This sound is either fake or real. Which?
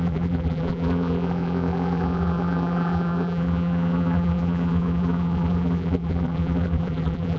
fake